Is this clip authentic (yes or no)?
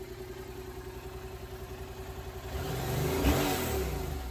yes